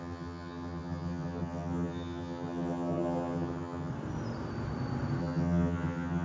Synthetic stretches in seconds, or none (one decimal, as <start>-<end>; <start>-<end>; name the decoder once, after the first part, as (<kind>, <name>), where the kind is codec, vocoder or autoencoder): 0.0-3.9 (vocoder, HiFi-GAN); 5.2-6.2